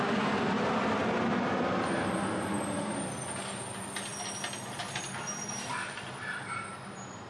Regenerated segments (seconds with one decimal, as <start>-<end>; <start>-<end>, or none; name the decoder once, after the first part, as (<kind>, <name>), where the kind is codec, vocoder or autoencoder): none